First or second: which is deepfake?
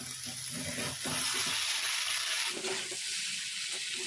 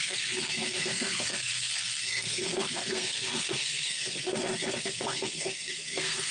second